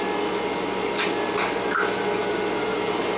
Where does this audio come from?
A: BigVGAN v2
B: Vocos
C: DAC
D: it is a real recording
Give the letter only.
D